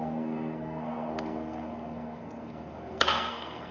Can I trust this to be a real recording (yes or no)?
no